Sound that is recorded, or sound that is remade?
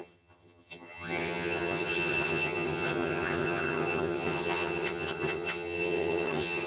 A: remade